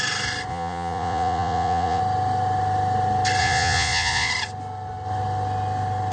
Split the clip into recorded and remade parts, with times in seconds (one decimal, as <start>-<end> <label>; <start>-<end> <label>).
0.0-0.5 recorded; 0.5-2.0 remade; 2.0-3.4 recorded; 3.4-4.3 remade; 4.3-6.1 recorded